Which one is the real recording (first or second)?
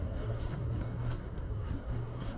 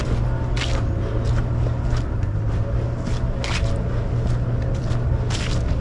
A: second